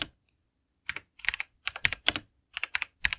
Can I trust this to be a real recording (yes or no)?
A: no